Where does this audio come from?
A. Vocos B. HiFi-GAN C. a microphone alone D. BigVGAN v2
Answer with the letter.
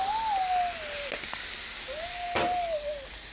C